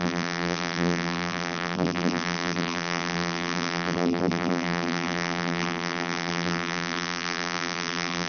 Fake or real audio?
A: fake